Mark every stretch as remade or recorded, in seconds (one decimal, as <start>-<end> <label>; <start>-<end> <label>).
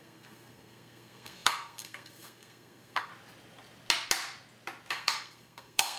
0.0-3.1 remade; 3.1-4.9 recorded; 4.9-6.0 remade